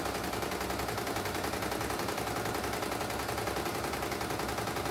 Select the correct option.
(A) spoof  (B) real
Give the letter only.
B